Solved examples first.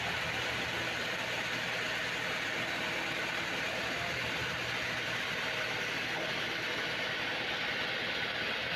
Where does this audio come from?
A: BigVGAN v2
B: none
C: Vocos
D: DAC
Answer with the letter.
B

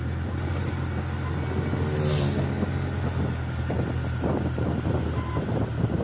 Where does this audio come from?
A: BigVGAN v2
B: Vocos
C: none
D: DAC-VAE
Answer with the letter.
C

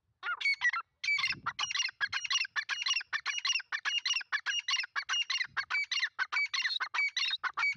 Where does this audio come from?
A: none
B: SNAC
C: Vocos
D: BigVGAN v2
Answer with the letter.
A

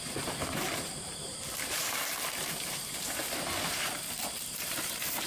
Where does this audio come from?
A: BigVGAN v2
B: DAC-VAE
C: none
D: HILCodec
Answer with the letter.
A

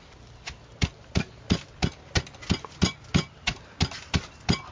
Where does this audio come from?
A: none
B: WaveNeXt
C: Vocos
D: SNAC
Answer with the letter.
A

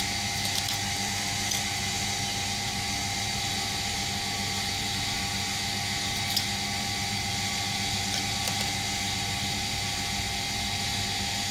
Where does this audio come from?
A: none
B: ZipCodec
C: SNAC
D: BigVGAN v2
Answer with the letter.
A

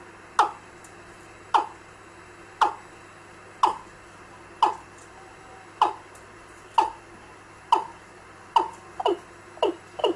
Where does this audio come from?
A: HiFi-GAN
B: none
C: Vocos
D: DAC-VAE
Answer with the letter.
B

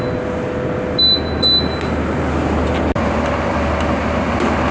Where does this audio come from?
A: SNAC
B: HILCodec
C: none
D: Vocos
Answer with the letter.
C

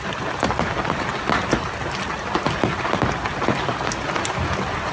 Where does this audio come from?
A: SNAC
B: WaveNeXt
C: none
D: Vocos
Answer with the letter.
C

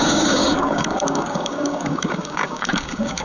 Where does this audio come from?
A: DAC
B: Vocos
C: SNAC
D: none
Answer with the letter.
A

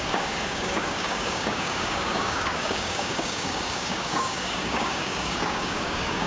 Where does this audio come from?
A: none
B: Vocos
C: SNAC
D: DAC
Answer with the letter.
D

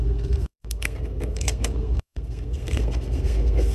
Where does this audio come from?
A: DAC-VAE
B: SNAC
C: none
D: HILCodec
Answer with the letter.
B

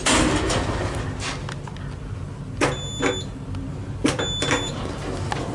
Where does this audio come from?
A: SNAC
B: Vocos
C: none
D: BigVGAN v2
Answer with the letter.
C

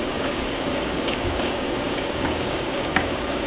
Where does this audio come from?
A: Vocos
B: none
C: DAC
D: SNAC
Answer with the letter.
C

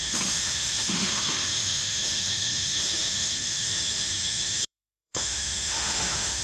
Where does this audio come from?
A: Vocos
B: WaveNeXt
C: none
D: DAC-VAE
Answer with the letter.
D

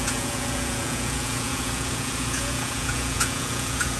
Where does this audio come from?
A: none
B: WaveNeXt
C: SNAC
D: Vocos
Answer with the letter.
D